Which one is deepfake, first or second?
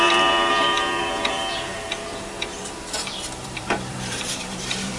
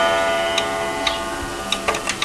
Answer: first